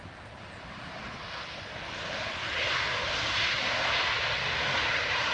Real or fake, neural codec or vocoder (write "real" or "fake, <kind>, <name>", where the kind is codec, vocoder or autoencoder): real